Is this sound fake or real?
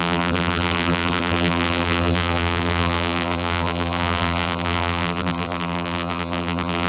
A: fake